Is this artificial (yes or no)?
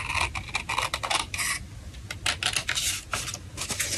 no